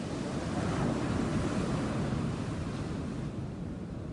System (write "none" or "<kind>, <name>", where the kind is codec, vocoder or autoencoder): none